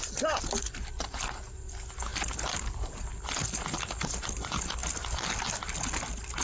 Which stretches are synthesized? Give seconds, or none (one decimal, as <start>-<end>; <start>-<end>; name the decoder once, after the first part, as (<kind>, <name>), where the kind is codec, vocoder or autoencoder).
none